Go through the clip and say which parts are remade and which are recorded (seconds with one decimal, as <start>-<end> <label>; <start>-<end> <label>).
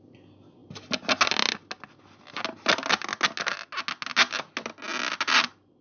0.0-5.8 recorded